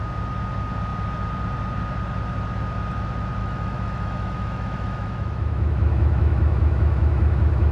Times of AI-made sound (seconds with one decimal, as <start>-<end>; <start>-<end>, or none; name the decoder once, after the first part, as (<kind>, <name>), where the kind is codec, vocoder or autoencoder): 3.4-7.7 (autoencoder, DAC-VAE)